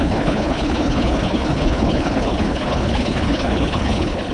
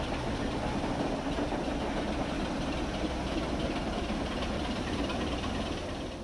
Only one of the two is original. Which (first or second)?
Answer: second